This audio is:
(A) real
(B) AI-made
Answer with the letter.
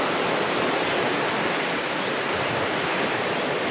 A